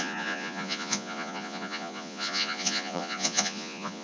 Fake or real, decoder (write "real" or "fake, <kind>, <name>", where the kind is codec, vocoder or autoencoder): fake, vocoder, Vocos